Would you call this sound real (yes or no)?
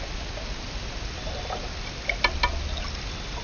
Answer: yes